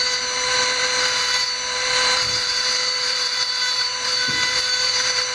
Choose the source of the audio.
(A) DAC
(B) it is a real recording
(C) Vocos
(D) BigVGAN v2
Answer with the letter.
D